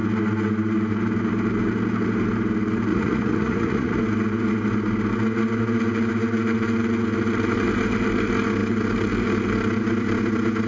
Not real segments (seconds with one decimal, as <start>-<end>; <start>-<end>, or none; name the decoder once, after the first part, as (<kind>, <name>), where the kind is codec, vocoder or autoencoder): 2.9-4.0 (vocoder, Vocos)